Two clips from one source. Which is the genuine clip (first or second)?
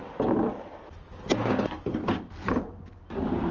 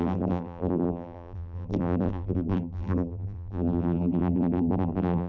first